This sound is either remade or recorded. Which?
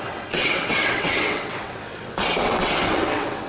remade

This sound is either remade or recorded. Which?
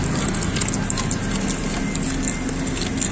recorded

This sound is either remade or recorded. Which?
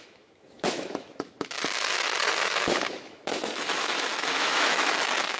remade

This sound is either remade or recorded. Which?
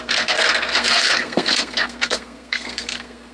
remade